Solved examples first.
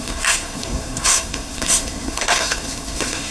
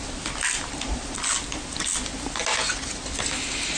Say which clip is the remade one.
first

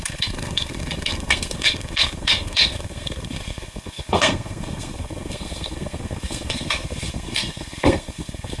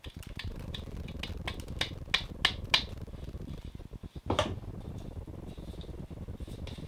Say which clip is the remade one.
first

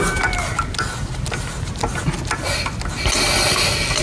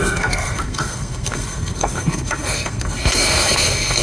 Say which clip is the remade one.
second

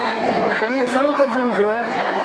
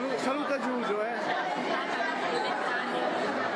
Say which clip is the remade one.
first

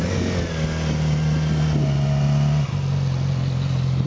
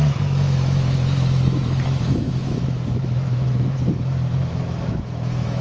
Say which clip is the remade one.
second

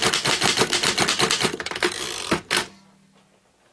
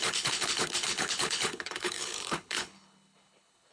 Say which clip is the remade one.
second